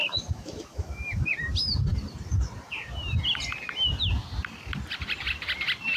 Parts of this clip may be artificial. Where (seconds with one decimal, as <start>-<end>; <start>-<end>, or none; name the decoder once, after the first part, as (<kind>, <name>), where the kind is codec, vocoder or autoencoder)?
0.0-1.2 (autoencoder, DAC-VAE)